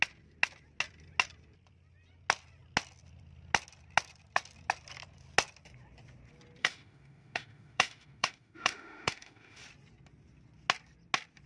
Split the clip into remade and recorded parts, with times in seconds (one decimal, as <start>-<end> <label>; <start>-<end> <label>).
0.0-6.6 recorded; 6.6-9.6 remade; 9.6-11.5 recorded

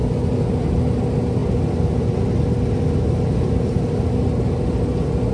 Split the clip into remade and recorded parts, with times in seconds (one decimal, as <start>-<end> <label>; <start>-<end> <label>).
0.0-5.3 recorded

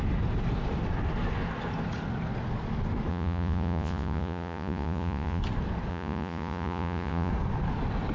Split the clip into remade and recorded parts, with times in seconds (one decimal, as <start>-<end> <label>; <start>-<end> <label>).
0.0-3.1 recorded; 3.1-5.4 remade; 5.4-5.9 recorded; 5.9-7.3 remade; 7.3-8.1 recorded

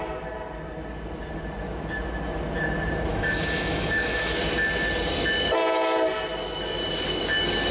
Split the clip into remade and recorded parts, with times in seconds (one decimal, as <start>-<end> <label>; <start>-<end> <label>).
0.0-3.1 recorded; 3.1-4.4 remade; 4.4-7.7 recorded

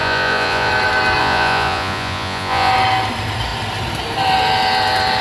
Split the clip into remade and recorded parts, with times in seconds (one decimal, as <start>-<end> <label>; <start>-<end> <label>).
0.0-0.7 remade; 0.7-1.2 recorded; 1.2-2.7 remade; 2.7-5.2 recorded

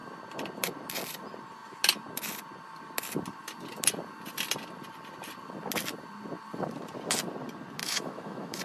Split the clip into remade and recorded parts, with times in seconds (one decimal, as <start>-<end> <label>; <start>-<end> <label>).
0.0-7.8 recorded; 7.8-8.6 remade

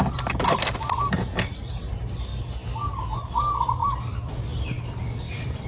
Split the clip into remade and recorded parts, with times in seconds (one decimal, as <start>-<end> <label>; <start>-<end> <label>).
0.0-5.7 recorded

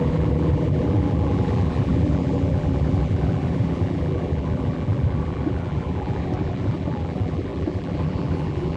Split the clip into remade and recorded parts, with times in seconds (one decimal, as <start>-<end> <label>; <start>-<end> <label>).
0.0-8.8 remade